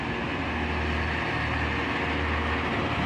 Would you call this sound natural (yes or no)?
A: yes